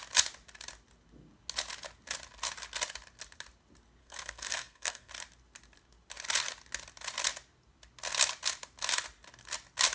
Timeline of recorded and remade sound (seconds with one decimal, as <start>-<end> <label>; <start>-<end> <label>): 0.0-4.0 recorded; 4.0-5.1 remade; 5.1-9.9 recorded